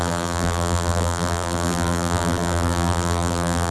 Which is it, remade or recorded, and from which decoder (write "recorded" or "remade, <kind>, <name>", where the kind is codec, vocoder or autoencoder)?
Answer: remade, vocoder, BigVGAN v2